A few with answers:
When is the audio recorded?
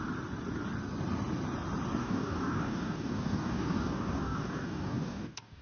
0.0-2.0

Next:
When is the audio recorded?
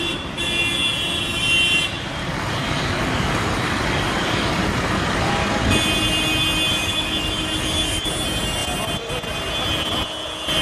0.0-2.2; 5.3-6.7; 8.1-10.6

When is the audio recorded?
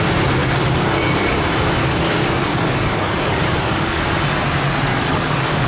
0.0-0.4; 1.4-1.8; 4.0-4.9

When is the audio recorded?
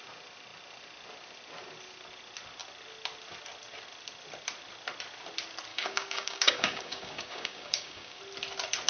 0.0-5.7; 8.2-8.9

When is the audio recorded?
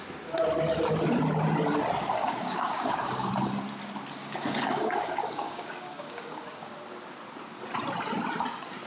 0.0-2.1; 3.3-4.2; 6.7-8.9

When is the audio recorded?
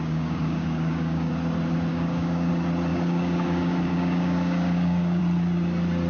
1.3-1.9; 2.5-2.9; 5.2-6.1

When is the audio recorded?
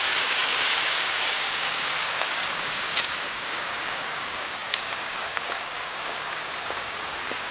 none